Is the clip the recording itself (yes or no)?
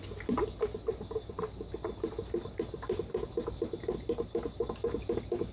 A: yes